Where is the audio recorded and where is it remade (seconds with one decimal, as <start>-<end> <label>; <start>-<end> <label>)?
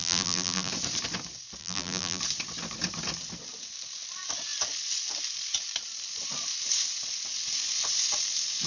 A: 0.0-0.7 remade; 0.7-1.6 recorded; 1.6-2.2 remade; 2.2-8.7 recorded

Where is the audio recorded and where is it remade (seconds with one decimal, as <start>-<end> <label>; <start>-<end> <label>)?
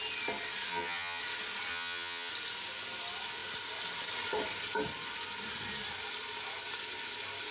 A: 0.0-0.7 recorded; 0.7-1.2 remade; 1.2-1.7 recorded; 1.7-2.3 remade; 2.3-7.5 recorded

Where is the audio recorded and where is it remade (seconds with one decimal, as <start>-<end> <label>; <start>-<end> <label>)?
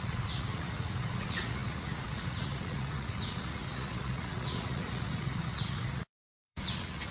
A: 0.0-7.1 remade